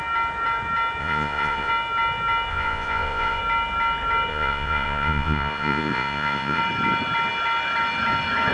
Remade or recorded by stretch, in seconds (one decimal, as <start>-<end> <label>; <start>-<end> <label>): 0.0-1.0 recorded; 1.0-1.7 remade; 1.7-2.5 recorded; 2.5-3.4 remade; 3.4-4.3 recorded; 4.3-6.6 remade; 6.6-8.5 recorded